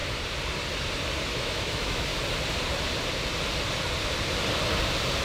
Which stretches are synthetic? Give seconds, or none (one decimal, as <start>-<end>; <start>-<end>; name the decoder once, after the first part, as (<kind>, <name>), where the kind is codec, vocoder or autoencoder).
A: 1.3-2.1 (autoencoder, DAC-VAE)